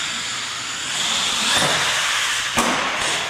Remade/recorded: recorded